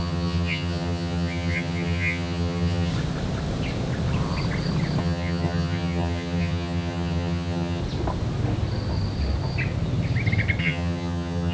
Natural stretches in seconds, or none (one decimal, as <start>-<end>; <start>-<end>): 2.9-5.0; 7.8-10.6